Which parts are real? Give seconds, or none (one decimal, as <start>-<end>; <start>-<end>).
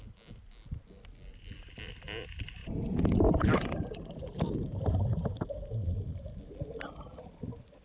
0.0-2.6; 4.8-7.8